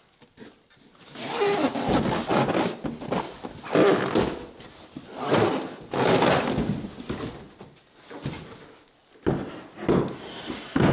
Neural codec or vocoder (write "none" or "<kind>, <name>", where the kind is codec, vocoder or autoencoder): none